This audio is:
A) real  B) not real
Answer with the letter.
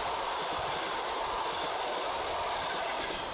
A